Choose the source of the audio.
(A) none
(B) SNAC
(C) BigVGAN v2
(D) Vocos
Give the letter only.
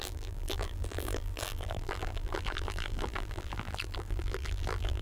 C